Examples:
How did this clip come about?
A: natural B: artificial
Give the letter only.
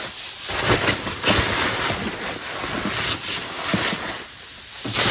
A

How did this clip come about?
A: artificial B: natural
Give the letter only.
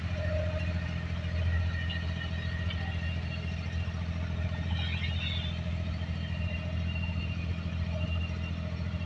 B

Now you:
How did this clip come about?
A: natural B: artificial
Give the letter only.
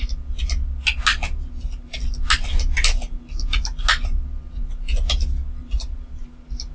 A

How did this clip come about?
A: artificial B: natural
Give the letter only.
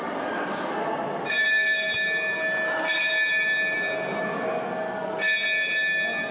B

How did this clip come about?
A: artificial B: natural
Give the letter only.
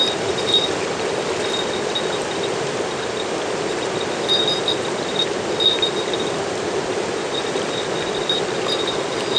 B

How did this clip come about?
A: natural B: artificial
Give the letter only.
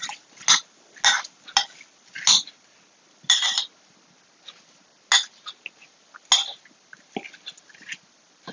A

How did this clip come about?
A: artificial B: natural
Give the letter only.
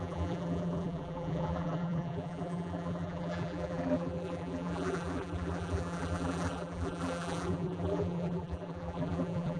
A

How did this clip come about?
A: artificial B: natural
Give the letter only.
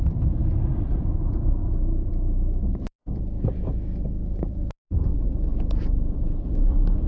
A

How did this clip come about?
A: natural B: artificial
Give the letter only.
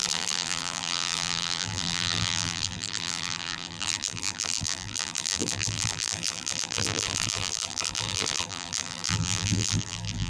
B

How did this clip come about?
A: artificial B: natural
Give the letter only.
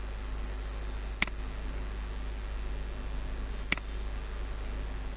B